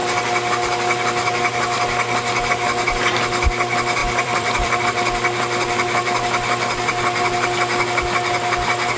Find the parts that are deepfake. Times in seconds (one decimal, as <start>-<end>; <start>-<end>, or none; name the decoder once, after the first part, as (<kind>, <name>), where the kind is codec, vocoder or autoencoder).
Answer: 4.0-4.8 (vocoder, BigVGAN v2)